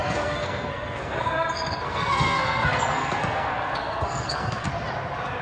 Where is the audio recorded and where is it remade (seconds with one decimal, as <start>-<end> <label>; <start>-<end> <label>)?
0.0-4.7 remade; 4.7-5.4 recorded